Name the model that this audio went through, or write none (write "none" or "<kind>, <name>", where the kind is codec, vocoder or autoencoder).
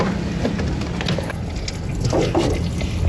none